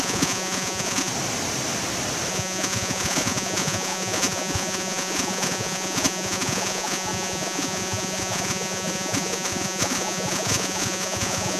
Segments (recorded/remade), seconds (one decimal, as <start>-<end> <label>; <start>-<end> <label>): 0.0-1.1 remade; 1.1-2.3 recorded; 2.3-11.6 remade